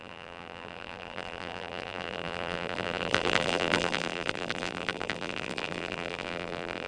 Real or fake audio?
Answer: fake